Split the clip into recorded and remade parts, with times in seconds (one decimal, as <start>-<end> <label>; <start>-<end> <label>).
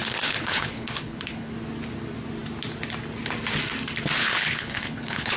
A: 0.0-1.5 remade; 1.5-4.2 recorded; 4.2-5.4 remade